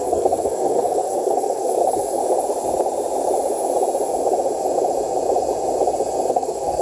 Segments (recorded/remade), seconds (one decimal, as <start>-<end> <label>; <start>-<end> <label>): 0.0-2.2 remade; 2.2-6.3 recorded; 6.3-6.8 remade